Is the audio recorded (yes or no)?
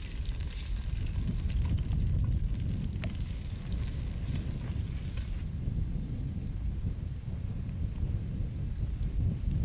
yes